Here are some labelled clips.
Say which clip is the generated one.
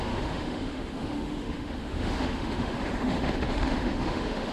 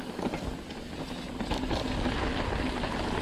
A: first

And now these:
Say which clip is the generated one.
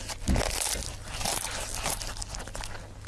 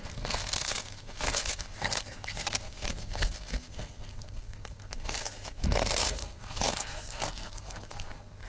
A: second